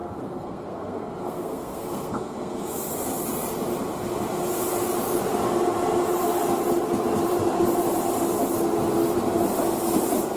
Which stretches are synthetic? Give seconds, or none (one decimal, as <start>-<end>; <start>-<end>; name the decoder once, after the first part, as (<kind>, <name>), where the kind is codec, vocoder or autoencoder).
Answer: 0.0-2.8 (codec, SNAC)